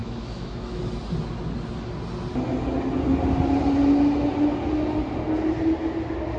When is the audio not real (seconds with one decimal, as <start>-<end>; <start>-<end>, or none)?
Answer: 0.0-0.8